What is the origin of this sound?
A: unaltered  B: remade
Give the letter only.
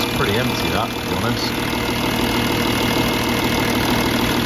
A